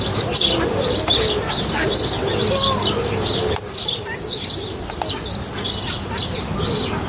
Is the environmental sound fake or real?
real